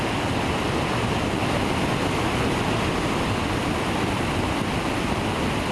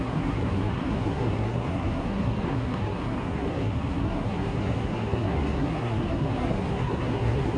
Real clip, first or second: first